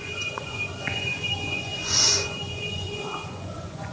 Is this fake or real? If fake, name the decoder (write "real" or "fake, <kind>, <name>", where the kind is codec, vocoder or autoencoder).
fake, vocoder, Vocos